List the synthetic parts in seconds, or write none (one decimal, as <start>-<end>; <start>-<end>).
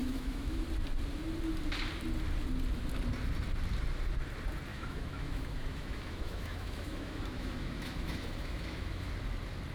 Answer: 0.0-0.6; 4.7-9.1